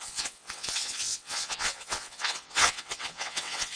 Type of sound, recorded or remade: remade